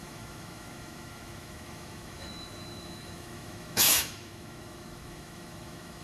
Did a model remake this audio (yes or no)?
yes